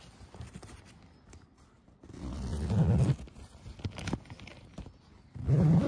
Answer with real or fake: real